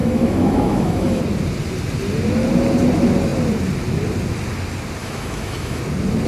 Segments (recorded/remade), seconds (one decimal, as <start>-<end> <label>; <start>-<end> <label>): 0.0-1.2 remade; 1.2-5.0 recorded; 5.0-5.8 remade; 5.8-6.3 recorded